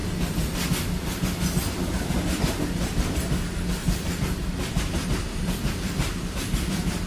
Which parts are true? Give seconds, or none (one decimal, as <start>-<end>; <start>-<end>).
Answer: 0.0-3.8